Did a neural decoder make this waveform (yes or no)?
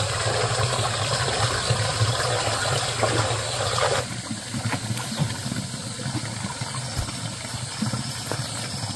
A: no